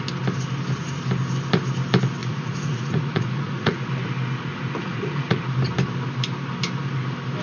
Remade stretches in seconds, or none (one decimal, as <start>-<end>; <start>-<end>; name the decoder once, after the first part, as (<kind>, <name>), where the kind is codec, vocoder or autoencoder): 2.2-3.9 (vocoder, Vocos); 4.5-5.4